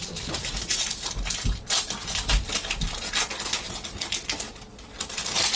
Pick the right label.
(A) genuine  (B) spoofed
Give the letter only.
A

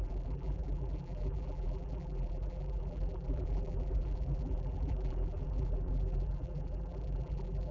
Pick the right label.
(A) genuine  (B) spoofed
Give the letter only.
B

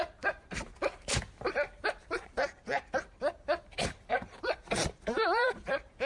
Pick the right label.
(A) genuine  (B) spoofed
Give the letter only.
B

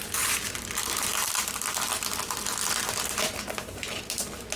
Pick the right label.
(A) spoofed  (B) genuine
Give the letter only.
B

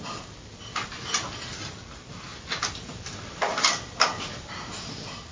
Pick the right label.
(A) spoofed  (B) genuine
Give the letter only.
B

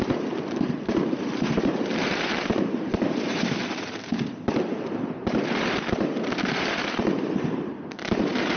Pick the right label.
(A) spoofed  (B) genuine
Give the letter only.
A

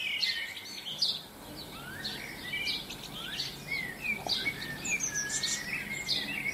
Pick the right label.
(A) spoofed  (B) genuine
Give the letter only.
B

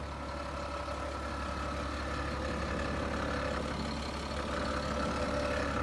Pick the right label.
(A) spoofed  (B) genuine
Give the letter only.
B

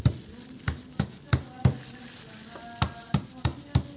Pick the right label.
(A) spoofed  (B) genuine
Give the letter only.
A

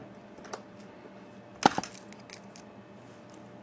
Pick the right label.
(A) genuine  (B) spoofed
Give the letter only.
A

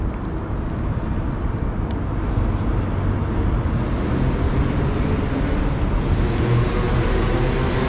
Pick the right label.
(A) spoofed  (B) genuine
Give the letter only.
B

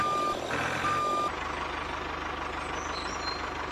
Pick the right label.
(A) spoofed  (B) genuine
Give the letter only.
B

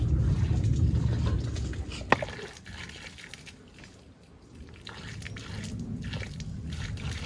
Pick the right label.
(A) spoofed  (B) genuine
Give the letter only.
B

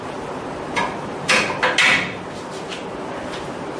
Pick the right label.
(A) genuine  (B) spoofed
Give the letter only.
A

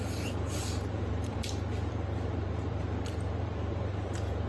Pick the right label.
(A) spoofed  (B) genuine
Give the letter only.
A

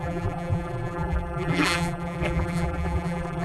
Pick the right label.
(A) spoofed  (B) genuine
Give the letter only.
A